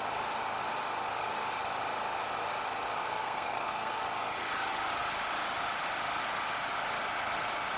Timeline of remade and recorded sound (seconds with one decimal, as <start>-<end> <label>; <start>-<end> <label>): 0.0-3.0 recorded; 3.0-4.0 remade; 4.0-7.8 recorded

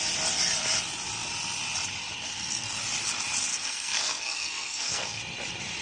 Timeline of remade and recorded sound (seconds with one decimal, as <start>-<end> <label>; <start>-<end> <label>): 0.0-3.5 recorded; 3.5-5.2 remade; 5.2-5.8 recorded

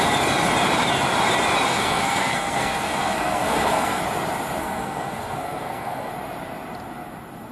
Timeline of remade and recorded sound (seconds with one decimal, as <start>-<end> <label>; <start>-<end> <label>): 0.0-1.7 recorded; 1.7-4.0 remade; 4.0-4.6 recorded; 4.6-6.1 remade; 6.1-7.5 recorded

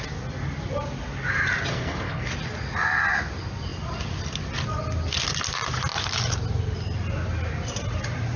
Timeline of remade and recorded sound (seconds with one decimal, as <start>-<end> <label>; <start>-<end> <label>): 0.0-1.7 recorded; 1.7-2.3 remade; 2.3-8.4 recorded

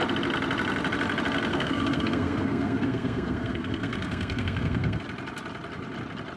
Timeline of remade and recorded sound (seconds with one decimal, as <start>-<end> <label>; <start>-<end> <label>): 0.0-1.5 recorded; 1.5-5.0 remade; 5.0-6.4 recorded

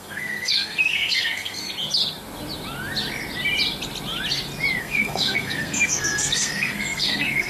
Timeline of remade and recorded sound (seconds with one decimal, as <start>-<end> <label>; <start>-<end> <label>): 0.0-1.6 remade; 1.6-4.8 recorded; 4.8-7.5 remade

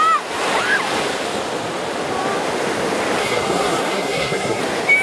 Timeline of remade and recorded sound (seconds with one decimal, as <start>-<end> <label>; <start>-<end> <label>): 0.0-3.2 recorded; 3.2-4.6 remade; 4.6-5.0 recorded

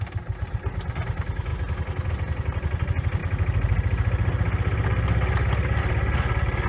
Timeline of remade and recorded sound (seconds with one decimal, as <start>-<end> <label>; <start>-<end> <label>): 0.0-6.7 recorded